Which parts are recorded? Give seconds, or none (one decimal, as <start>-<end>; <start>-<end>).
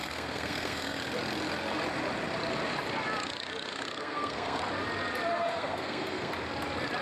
1.0-3.7; 4.6-5.3; 6.3-7.0